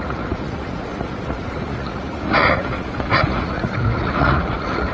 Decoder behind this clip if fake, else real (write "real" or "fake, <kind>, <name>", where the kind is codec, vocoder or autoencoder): fake, vocoder, Vocos